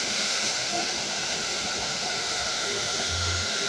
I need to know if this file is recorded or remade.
remade